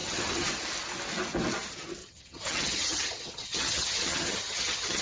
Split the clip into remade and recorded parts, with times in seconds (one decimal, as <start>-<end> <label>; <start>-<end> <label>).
0.0-0.5 remade; 0.5-2.0 recorded; 2.0-5.0 remade